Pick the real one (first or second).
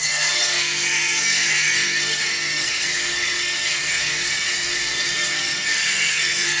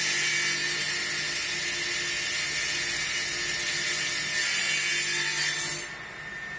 second